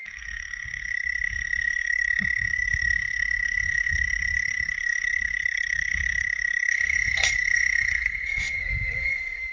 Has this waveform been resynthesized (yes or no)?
yes